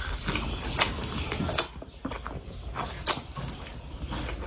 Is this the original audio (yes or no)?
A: yes